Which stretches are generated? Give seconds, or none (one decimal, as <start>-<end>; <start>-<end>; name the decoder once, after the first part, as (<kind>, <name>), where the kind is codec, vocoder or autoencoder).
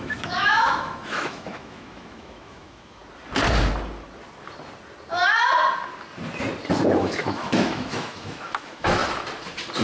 0.0-3.0 (autoencoder, DAC-VAE); 7.0-9.0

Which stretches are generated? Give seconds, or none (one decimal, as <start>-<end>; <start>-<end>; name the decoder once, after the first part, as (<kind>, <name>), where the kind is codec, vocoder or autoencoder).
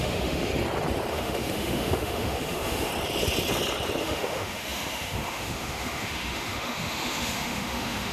0.0-0.5 (autoencoder, DAC-VAE); 1.1-2.9; 4.0-8.1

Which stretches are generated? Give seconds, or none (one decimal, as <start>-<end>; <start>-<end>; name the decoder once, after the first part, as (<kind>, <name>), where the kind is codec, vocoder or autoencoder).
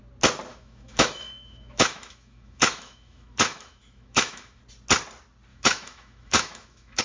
0.5-4.6 (autoencoder, DAC-VAE); 5.5-7.0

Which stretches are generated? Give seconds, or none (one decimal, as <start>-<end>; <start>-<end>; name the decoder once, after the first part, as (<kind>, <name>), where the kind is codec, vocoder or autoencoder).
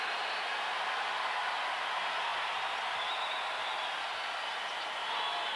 none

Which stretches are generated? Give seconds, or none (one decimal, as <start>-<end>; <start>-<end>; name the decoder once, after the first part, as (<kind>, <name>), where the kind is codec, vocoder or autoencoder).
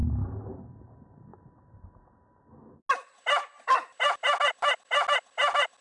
none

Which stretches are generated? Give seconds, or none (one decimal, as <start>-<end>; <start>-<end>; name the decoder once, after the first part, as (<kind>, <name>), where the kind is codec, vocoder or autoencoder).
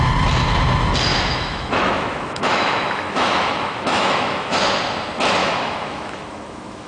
1.1-4.6 (autoencoder, DAC-VAE); 5.4-6.9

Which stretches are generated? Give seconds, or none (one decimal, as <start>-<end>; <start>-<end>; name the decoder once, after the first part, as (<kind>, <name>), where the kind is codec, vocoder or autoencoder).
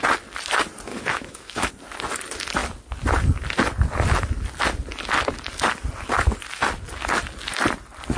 0.9-1.7 (autoencoder, DAC-VAE)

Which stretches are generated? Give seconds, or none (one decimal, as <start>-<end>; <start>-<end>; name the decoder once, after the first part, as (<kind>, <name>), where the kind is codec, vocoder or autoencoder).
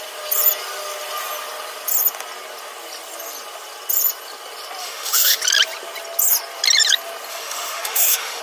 4.8-5.4 (autoencoder, DAC-VAE); 7.3-8.4